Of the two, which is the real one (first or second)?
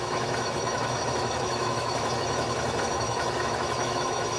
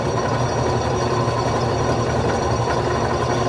second